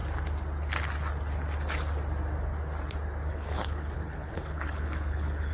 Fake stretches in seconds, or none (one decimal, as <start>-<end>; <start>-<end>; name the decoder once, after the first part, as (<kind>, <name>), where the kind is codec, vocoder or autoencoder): 3.3-5.5 (codec, HILCodec)